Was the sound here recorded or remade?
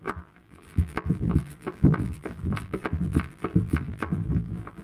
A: remade